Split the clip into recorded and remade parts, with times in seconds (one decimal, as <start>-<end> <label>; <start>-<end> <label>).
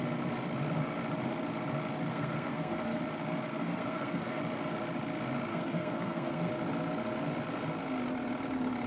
0.0-2.1 recorded; 2.1-3.0 remade; 3.0-3.5 recorded; 3.5-4.4 remade; 4.4-5.5 recorded; 5.5-6.5 remade; 6.5-8.9 recorded